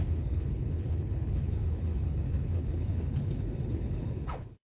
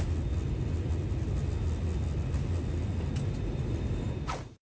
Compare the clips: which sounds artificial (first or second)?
first